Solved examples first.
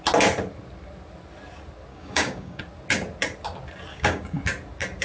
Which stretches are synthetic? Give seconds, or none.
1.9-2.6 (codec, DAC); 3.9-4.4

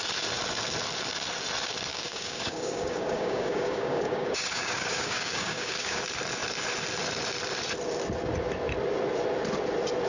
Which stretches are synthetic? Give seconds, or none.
1.9-6.0 (codec, DAC)

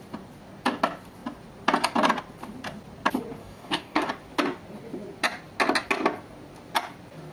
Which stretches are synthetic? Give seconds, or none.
3.4-4.1 (codec, DAC)

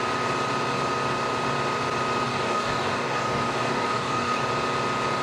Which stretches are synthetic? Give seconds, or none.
2.3-4.4 (codec, DAC)

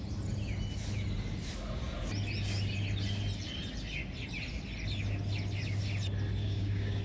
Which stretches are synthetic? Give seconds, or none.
6.4-7.0 (codec, DAC)